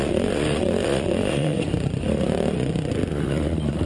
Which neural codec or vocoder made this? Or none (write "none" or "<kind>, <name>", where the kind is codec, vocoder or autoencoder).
vocoder, Vocos